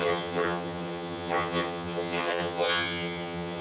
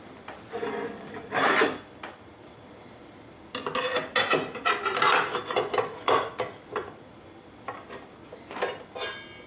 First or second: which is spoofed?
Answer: first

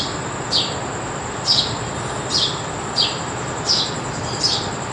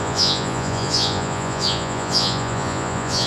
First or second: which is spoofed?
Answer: second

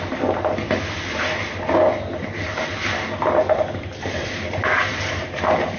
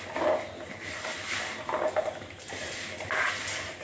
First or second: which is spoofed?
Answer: second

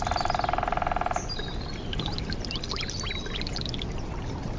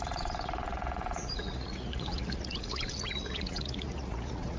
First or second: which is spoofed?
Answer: second